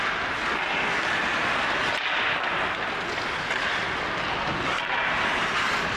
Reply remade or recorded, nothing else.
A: recorded